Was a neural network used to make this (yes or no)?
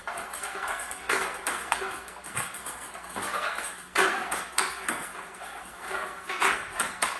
yes